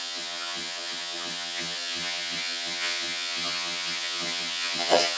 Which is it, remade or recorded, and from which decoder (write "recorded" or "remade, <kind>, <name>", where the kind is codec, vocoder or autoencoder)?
remade, vocoder, HiFi-GAN